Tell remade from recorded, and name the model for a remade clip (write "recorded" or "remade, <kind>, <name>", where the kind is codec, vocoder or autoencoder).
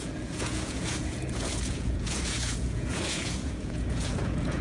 remade, vocoder, Vocos